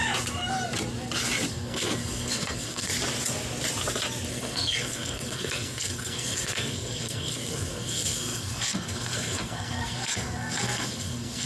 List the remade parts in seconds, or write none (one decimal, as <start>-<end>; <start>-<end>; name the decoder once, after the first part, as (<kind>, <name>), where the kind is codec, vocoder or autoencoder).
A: 1.5-2.9 (codec, SNAC); 4.3-11.5